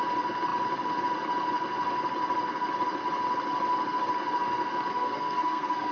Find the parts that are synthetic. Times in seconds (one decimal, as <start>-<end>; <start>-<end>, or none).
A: 4.9-5.9